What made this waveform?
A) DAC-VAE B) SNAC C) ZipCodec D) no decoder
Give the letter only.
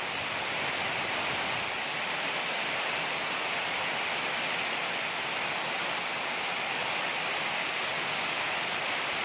D